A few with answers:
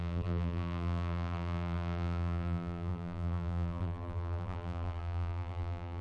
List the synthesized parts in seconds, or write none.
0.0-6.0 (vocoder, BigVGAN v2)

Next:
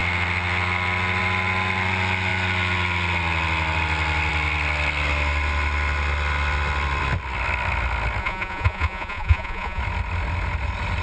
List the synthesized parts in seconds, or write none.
8.2-9.8 (vocoder, Vocos)

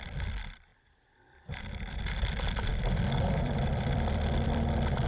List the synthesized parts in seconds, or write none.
0.0-5.1 (vocoder, BigVGAN v2)

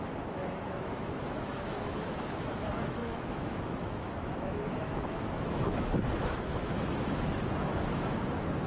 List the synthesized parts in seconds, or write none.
0.0-7.7 (autoencoder, DAC-VAE)

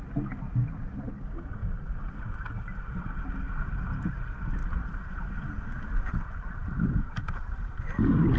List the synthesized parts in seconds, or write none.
4.6-6.1 (vocoder, BigVGAN v2)

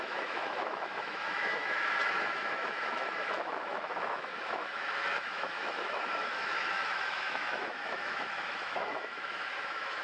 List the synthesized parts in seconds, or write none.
0.0-10.0 (autoencoder, DAC-VAE)